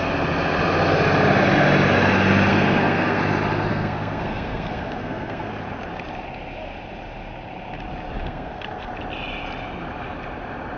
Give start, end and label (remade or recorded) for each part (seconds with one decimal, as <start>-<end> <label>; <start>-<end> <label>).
0.0-2.5 recorded; 2.5-3.2 remade; 3.2-3.7 recorded; 3.7-5.5 remade; 5.5-8.2 recorded; 8.2-8.9 remade; 8.9-10.8 recorded